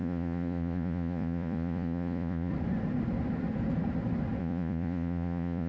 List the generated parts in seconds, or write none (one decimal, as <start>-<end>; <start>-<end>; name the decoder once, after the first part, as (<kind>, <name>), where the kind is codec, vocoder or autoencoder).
0.0-2.5 (vocoder, Vocos); 4.4-5.7

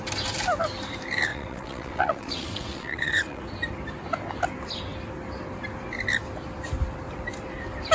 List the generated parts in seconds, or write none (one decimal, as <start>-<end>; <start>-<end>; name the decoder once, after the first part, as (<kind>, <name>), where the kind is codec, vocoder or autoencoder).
1.3-3.4 (vocoder, WaveNeXt)

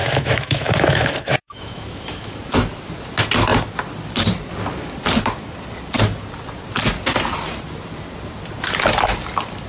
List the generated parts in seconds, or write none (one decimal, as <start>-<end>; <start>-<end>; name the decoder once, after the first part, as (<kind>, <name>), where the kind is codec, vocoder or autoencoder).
0.0-2.3 (autoencoder, DAC-VAE)

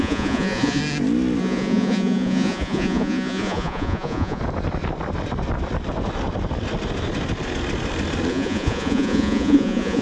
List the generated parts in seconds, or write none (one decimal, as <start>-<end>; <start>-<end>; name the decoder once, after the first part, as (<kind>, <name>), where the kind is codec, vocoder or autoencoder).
0.0-0.8 (vocoder, Vocos); 1.4-4.4; 8.3-10.0